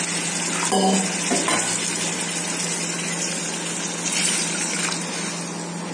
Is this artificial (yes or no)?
no